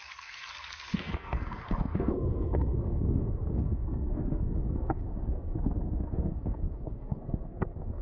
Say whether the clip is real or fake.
fake